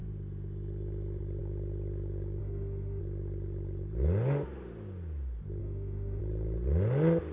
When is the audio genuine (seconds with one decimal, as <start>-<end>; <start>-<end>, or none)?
0.0-2.4; 3.0-5.6; 6.2-7.3